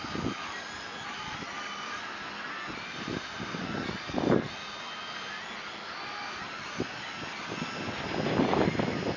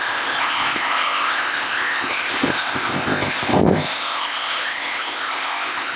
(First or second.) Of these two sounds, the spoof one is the second